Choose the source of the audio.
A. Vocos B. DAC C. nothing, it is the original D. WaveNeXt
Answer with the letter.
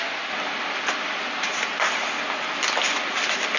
C